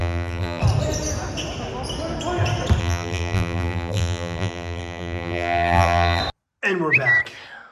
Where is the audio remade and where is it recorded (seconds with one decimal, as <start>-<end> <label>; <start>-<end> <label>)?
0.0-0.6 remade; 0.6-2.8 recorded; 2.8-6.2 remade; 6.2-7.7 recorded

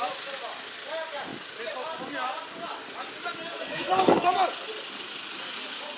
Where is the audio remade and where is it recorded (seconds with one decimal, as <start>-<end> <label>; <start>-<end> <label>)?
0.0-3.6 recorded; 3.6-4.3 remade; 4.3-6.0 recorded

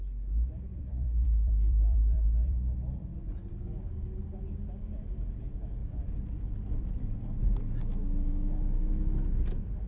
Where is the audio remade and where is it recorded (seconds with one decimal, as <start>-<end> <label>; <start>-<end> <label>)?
0.0-0.7 recorded; 0.7-3.9 remade; 3.9-5.8 recorded; 5.8-7.4 remade; 7.4-9.9 recorded

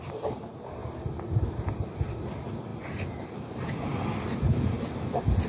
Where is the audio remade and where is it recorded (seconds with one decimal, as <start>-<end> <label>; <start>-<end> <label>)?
0.0-3.9 remade; 3.9-4.5 recorded; 4.5-5.5 remade